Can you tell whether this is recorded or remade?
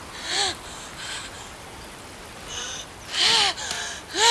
recorded